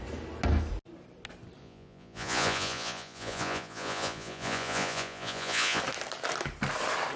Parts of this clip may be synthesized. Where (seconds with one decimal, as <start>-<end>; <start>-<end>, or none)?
1.6-5.8